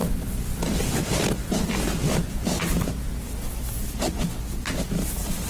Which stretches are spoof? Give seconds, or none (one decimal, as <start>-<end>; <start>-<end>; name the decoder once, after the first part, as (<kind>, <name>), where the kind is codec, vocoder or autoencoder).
2.0-2.6 (vocoder, BigVGAN v2)